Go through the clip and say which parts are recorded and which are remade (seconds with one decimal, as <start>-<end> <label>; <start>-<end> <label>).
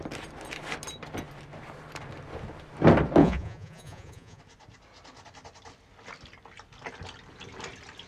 0.0-3.2 recorded; 3.2-4.4 remade; 4.4-8.1 recorded